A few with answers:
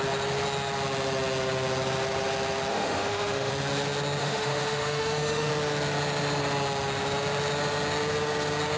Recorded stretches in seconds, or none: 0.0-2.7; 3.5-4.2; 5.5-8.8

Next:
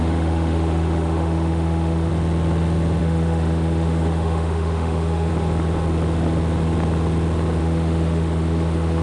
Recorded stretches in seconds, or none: 2.1-3.0; 5.3-7.6

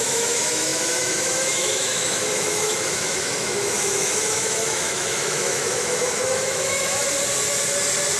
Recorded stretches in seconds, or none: 7.0-8.2